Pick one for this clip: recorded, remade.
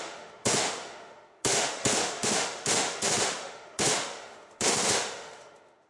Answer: remade